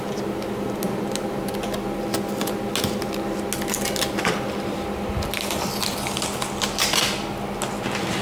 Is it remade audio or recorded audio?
recorded